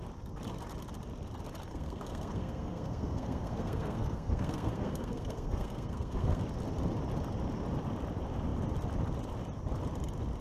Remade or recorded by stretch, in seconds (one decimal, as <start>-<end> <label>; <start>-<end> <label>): 0.0-1.7 recorded; 1.7-6.4 remade; 6.4-10.4 recorded